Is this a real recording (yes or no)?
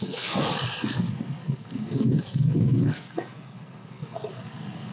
no